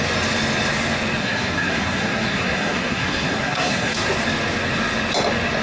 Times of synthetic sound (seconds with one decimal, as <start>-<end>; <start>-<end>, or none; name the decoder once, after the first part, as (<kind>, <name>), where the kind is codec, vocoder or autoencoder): 1.2-4.1 (codec, SNAC)